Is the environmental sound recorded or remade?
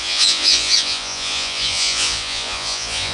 remade